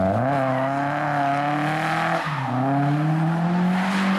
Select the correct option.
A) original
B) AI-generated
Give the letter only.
A